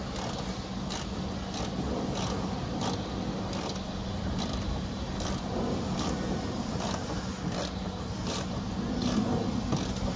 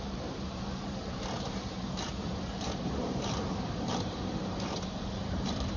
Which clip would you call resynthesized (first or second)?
second